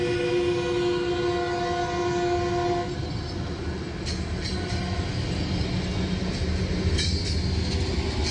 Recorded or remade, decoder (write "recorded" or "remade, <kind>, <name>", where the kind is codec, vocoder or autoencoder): recorded